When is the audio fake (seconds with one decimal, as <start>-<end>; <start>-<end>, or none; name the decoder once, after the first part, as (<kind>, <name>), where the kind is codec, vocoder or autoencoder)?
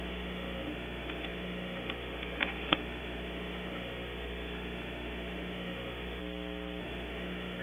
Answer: 0.0-6.2 (autoencoder, DAC-VAE); 6.8-7.6